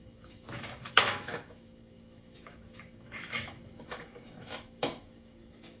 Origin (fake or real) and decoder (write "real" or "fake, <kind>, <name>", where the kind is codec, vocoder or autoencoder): fake, autoencoder, DAC-VAE